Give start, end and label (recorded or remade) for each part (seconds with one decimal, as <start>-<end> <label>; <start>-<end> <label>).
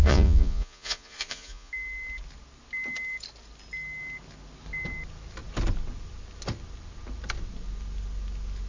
0.0-1.7 remade; 1.7-8.7 recorded